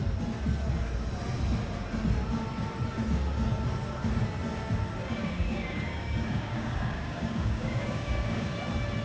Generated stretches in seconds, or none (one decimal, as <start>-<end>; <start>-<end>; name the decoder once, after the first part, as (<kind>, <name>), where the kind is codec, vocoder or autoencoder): 5.2-8.6 (codec, DAC)